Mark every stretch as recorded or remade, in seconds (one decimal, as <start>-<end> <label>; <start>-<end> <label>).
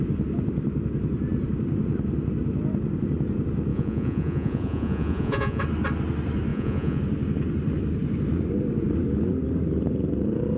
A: 0.0-3.7 recorded; 3.7-5.6 remade; 5.6-6.5 recorded; 6.5-7.0 remade; 7.0-10.6 recorded